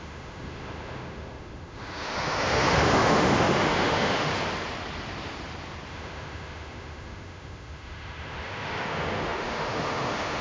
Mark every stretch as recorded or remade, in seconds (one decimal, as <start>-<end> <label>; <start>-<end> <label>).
0.0-4.3 remade; 4.3-5.9 recorded; 5.9-10.4 remade